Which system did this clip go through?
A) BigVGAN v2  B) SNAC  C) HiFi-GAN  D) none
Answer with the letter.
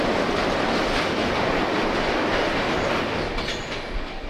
D